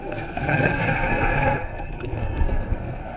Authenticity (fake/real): fake